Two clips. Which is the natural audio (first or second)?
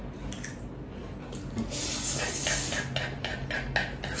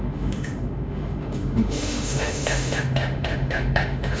first